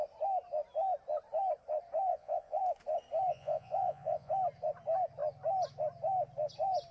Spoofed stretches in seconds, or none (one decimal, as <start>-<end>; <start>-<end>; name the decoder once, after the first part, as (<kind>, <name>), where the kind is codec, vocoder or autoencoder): 2.1-2.6 (vocoder, Vocos); 3.3-4.3